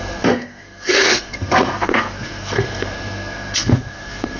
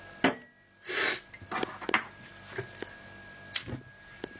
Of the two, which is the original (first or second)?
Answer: second